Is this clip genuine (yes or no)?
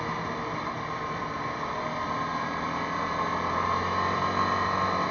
yes